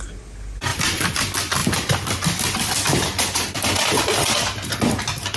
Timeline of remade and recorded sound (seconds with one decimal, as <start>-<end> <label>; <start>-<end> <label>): 0.0-0.7 recorded; 0.7-1.2 remade; 1.2-1.6 recorded; 1.6-3.7 remade; 3.7-5.4 recorded